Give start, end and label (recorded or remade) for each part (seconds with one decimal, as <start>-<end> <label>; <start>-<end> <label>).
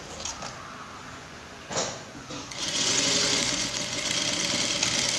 0.0-1.0 recorded; 1.0-4.1 remade; 4.1-5.2 recorded